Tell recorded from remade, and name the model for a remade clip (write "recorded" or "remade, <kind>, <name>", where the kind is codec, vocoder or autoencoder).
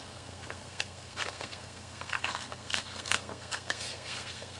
remade, codec, SNAC